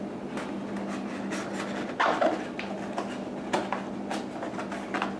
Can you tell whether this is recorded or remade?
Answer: recorded